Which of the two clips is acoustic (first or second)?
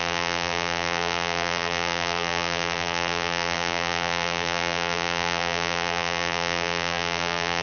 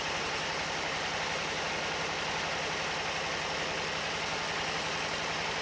second